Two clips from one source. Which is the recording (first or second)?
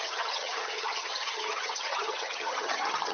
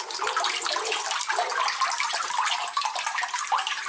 second